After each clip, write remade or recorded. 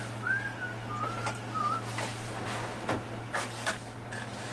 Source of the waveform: recorded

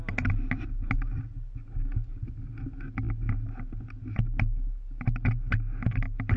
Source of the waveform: recorded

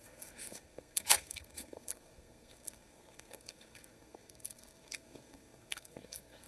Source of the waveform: remade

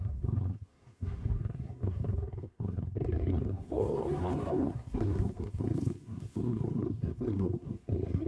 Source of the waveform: remade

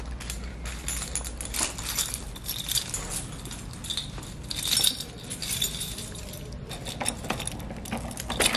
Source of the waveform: recorded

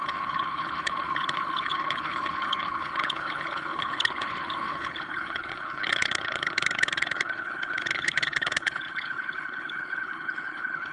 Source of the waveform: remade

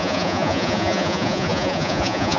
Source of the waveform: remade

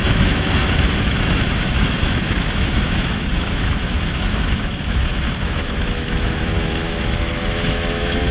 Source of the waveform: remade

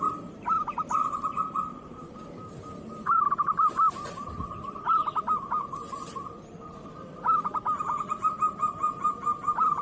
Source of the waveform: remade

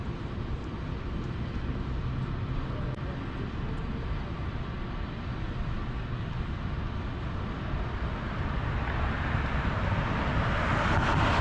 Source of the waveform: recorded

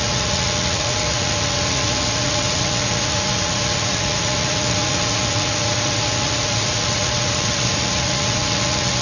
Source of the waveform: remade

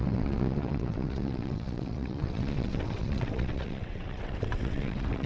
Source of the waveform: remade